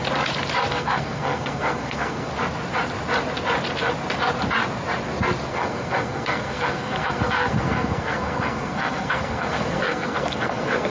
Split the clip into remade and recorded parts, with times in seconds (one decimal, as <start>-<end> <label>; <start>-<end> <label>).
0.0-0.7 recorded; 0.7-2.3 remade; 2.3-5.5 recorded; 5.5-10.9 remade